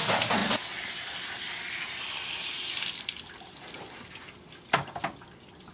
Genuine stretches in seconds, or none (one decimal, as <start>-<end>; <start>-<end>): 0.0-5.7